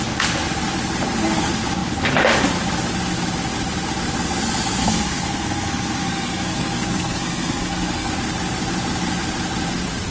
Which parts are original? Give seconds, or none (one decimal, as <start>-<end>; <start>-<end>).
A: 0.0-4.8; 8.1-10.1